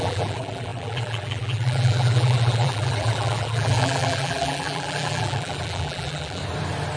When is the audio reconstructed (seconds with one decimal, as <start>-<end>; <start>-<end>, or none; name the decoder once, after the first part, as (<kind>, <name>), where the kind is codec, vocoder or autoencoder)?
0.0-6.4 (vocoder, BigVGAN v2)